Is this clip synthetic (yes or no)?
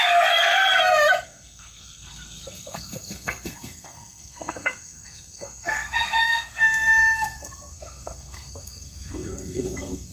yes